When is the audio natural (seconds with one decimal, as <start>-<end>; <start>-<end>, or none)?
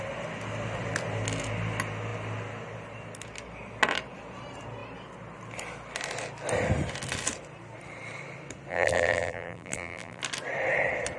0.0-8.7; 10.2-11.2